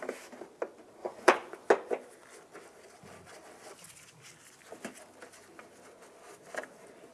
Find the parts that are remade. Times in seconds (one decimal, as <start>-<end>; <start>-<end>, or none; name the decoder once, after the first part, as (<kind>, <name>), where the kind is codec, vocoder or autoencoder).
1.0-1.7 (vocoder, Vocos)